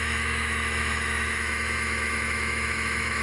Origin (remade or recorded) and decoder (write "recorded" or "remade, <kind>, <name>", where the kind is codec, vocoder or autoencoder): remade, autoencoder, DAC-VAE